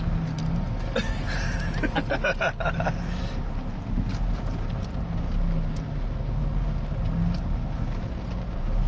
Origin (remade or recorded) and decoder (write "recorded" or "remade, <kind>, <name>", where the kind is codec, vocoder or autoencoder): recorded